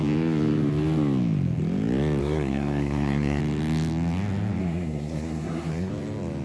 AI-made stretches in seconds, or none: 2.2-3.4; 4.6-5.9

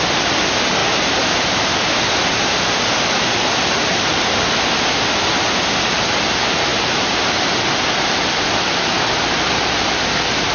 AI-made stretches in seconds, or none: 0.8-5.0; 6.7-7.3

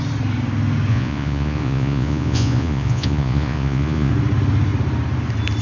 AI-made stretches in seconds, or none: 0.9-4.1